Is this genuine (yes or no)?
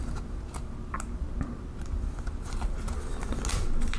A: yes